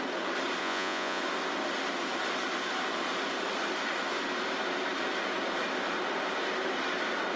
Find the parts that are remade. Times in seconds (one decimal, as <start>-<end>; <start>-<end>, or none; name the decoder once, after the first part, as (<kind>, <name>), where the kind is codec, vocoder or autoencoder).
0.6-1.2 (vocoder, Vocos)